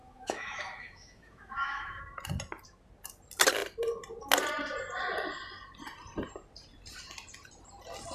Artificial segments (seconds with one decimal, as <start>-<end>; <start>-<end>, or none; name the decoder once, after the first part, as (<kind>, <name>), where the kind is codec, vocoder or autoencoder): 0.0-2.0 (autoencoder, DAC-VAE)